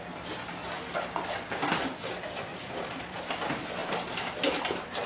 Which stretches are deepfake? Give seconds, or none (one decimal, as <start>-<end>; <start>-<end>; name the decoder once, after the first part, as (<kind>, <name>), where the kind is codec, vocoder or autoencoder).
2.5-3.4 (vocoder, BigVGAN v2); 3.8-4.3